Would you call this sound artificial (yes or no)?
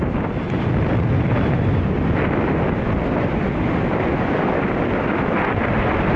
no